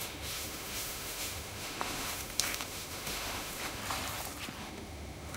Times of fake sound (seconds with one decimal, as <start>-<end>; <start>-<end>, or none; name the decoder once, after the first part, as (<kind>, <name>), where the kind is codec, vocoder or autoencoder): 0.0-3.8 (autoencoder, DAC-VAE); 4.6-5.4